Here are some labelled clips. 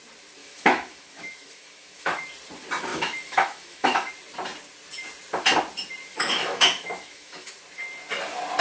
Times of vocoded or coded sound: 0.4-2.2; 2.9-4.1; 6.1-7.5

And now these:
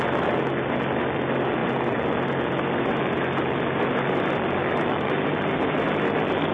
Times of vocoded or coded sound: 4.6-5.3

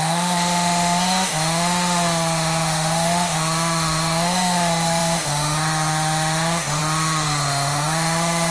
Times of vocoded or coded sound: 0.0-8.5

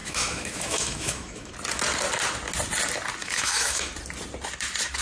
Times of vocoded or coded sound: 0.0-1.5; 3.2-3.9

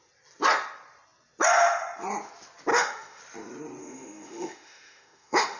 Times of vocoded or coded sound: 2.7-3.2; 3.8-5.6

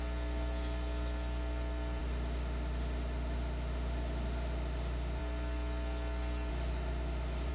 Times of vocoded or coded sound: 2.0-5.2; 6.5-7.5